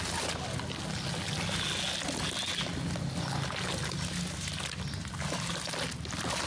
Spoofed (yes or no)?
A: no